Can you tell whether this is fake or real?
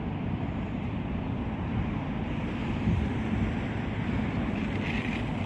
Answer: fake